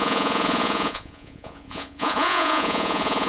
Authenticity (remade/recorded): remade